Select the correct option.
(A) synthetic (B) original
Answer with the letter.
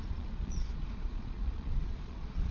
A